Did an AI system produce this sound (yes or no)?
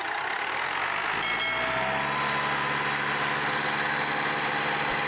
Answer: no